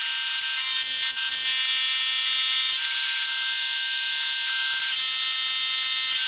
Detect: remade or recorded recorded